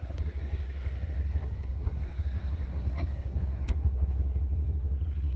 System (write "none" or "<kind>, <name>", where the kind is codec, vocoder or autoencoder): codec, SNAC